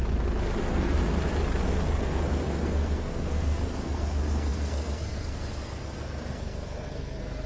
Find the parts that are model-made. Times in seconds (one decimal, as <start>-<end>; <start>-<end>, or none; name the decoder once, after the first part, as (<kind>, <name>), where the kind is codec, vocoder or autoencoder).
0.6-1.0 (codec, SNAC); 1.6-7.5